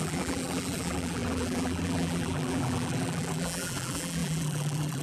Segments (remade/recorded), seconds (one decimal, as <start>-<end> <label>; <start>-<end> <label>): 0.0-5.0 remade